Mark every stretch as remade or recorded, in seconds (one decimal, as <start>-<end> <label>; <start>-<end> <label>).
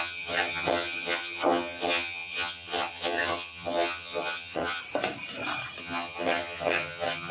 0.0-4.8 remade; 4.8-5.8 recorded; 5.8-7.3 remade